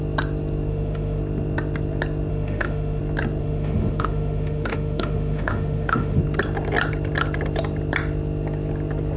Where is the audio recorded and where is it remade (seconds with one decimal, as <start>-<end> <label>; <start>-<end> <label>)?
0.0-0.7 recorded; 0.7-1.2 remade; 1.2-2.3 recorded; 2.3-3.0 remade; 3.0-3.4 recorded; 3.4-6.2 remade; 6.2-9.2 recorded